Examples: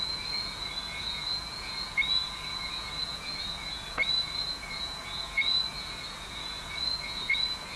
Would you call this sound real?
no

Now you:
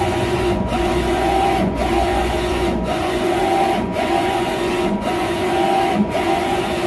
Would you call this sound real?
no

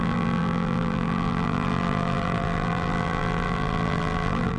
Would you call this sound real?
no